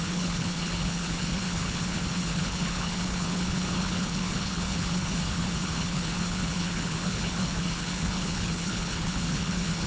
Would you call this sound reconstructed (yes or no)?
yes